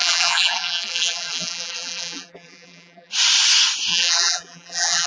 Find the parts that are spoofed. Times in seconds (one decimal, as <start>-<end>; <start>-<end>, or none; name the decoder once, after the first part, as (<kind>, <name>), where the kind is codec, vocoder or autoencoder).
0.0-3.1 (vocoder, BigVGAN v2); 3.9-5.1